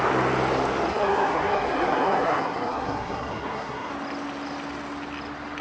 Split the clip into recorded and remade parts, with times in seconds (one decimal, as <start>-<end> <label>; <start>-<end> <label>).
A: 0.0-0.9 recorded; 0.9-3.9 remade; 3.9-5.6 recorded